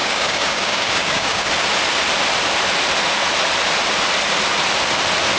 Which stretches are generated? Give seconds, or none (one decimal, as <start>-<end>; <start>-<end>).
0.0-1.5